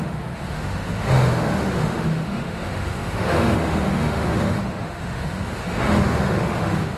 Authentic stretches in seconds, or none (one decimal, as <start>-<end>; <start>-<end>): none